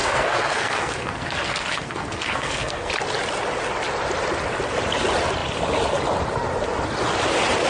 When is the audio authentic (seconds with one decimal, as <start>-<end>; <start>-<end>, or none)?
2.9-7.7